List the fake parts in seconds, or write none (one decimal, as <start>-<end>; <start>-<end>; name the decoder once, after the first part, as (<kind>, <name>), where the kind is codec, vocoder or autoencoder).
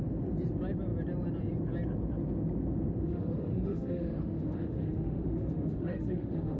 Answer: 3.0-6.6 (autoencoder, DAC-VAE)